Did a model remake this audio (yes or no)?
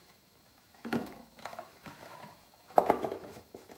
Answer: yes